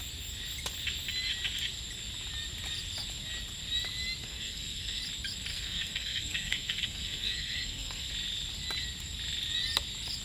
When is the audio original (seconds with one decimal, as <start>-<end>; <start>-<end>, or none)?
0.0-4.2; 5.0-5.5; 8.1-10.2

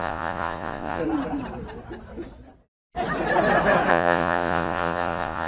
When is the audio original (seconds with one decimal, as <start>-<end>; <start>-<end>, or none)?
1.0-3.9

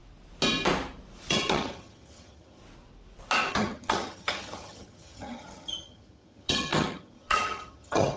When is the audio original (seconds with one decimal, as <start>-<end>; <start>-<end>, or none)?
0.0-1.3; 2.6-3.5

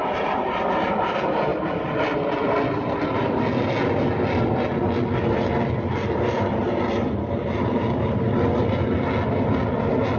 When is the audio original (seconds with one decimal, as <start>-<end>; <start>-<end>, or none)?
0.0-10.2

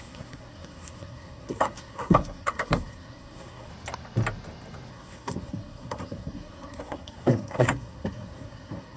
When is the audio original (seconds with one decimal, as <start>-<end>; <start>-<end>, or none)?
3.7-4.9

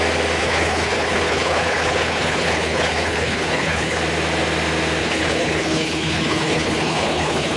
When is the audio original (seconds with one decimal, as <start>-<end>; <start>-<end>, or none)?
0.0-0.4; 4.0-5.0

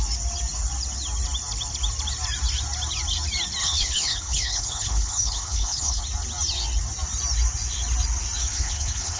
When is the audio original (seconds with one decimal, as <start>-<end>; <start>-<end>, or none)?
0.0-3.6; 6.0-8.4

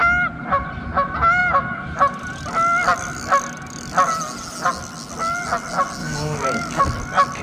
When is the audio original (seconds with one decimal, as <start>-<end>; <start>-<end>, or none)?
0.0-6.0; 6.8-7.4